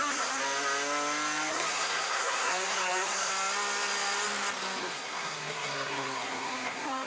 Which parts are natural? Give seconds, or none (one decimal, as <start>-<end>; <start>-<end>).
0.4-1.5; 3.3-4.8